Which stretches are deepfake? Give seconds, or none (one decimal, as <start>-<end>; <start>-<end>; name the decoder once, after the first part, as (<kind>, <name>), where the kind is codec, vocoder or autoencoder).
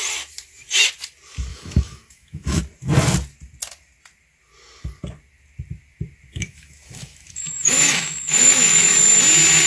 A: 1.5-2.6 (autoencoder, DAC-VAE); 6.3-9.2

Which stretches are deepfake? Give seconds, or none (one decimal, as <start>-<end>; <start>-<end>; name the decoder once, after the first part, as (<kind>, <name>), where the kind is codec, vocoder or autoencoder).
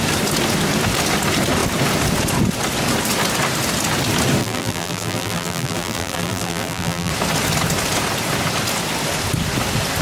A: 4.4-7.1 (vocoder, BigVGAN v2)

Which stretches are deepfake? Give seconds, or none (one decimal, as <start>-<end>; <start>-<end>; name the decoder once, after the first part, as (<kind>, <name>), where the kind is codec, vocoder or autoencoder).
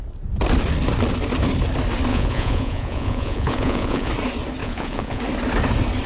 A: 2.1-4.1 (vocoder, Vocos); 4.6-5.2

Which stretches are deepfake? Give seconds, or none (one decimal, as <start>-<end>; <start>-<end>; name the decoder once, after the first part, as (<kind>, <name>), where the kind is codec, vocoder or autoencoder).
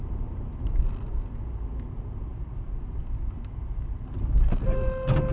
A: 0.0-0.8 (vocoder, BigVGAN v2)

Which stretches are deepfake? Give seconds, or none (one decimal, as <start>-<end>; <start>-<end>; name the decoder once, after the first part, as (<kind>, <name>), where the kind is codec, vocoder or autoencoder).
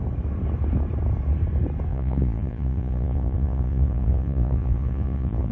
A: 1.9-5.5 (vocoder, Vocos)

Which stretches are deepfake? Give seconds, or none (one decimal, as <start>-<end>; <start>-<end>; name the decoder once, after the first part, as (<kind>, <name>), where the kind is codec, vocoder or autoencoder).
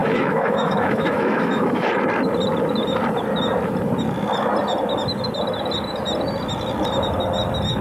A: 0.0-1.9 (autoencoder, DAC-VAE)